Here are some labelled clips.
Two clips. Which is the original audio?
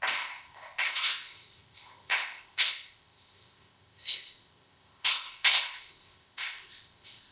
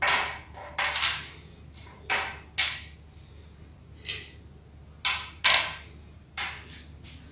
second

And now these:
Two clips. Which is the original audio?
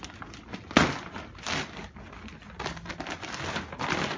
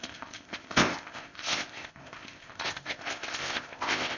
first